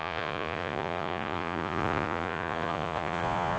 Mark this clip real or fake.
fake